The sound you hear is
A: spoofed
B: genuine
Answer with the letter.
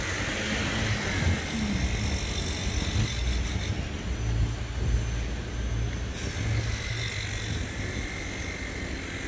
B